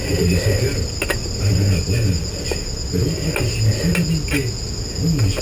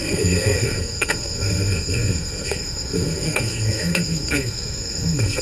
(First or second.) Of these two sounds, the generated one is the second